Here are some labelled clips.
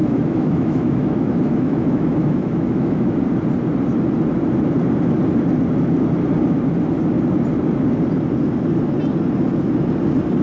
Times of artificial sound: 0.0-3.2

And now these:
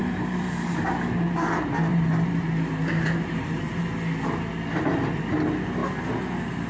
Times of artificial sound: 0.0-0.7; 1.9-3.8

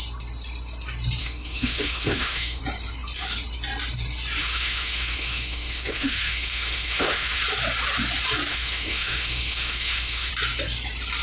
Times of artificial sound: 1.2-2.6; 4.4-7.4; 8.5-10.3

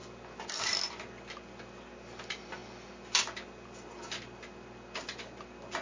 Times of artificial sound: none

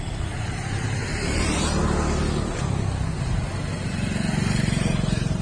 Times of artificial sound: 0.0-1.8; 4.5-5.4